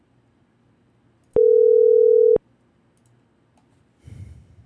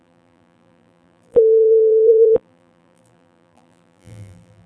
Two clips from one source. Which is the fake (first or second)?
second